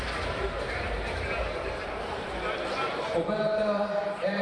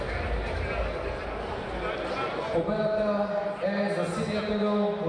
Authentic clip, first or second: second